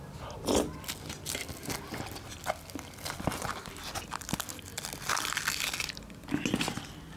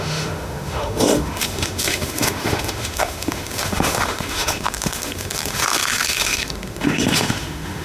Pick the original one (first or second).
first